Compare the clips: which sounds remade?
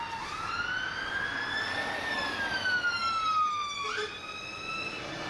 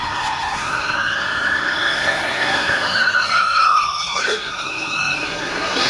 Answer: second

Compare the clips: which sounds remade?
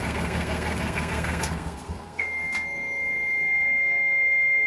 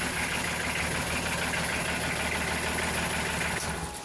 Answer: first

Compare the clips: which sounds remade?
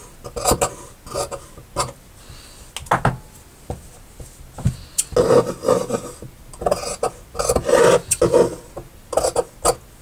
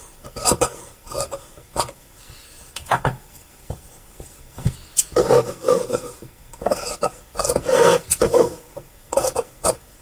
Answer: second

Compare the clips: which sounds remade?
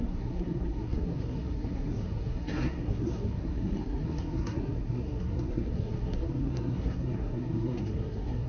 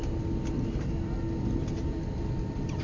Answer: first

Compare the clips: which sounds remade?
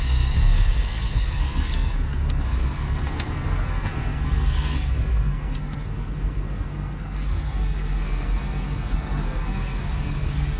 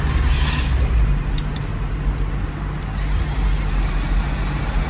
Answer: first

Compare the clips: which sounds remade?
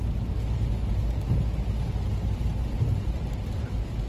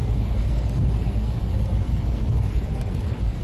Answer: second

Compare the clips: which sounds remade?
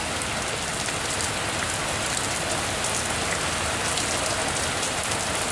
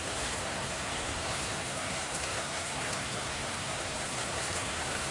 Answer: second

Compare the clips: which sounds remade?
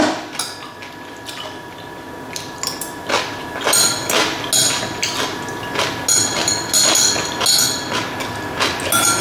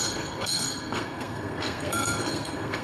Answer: second